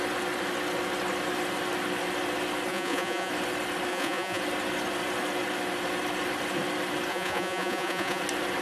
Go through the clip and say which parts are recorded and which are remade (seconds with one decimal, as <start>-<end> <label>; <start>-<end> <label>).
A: 0.0-2.7 recorded; 2.7-3.3 remade; 3.3-3.9 recorded; 3.9-4.4 remade; 4.4-7.1 recorded; 7.1-8.2 remade; 8.2-8.6 recorded